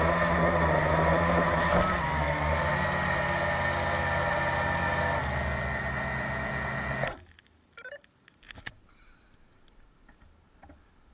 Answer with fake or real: real